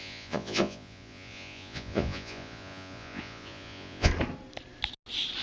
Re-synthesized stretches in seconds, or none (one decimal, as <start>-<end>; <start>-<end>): 0.0-4.1